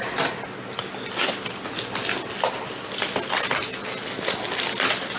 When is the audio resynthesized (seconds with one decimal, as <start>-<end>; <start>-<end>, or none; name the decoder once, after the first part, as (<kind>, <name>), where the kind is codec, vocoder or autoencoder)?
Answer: none